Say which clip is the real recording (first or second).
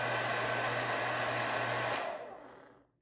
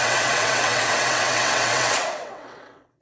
first